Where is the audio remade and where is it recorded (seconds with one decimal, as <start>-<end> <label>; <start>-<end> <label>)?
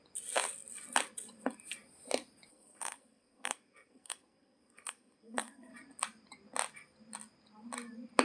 0.0-2.5 recorded; 2.5-5.7 remade; 5.7-8.2 recorded